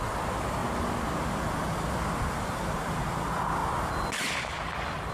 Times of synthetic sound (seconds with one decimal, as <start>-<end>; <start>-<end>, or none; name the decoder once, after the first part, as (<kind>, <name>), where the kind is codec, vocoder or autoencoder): none